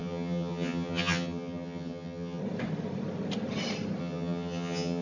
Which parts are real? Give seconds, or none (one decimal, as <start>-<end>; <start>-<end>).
2.4-4.0